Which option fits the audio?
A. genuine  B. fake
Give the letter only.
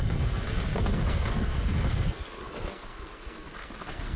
B